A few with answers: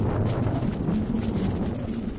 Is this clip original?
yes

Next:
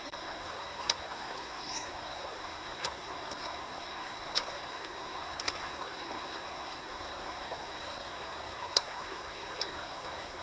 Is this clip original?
no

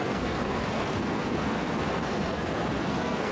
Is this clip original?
no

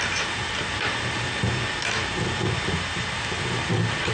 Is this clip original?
yes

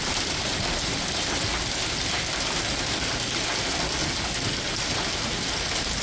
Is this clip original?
yes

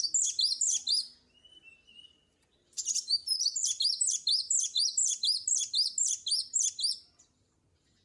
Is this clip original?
yes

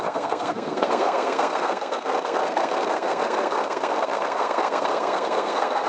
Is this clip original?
no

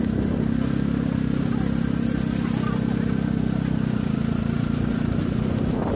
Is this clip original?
yes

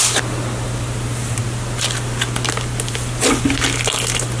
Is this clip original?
yes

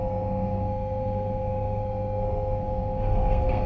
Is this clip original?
no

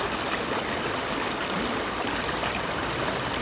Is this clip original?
yes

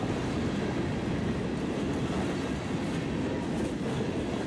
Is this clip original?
yes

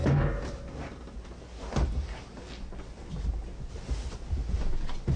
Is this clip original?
yes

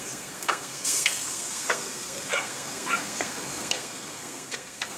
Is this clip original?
no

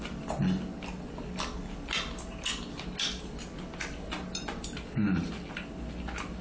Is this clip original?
yes